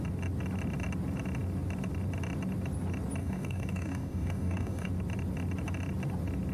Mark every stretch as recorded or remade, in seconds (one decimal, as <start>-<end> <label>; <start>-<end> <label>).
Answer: 0.0-3.2 recorded; 3.2-4.9 remade; 4.9-6.5 recorded